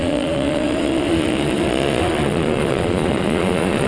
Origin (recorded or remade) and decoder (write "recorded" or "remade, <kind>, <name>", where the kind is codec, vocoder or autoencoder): remade, vocoder, Vocos